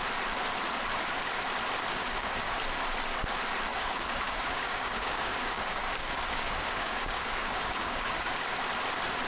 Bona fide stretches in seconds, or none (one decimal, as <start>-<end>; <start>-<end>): 0.0-1.9; 2.6-3.7; 8.3-9.3